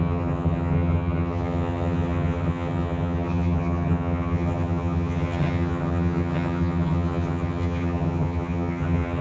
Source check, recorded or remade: remade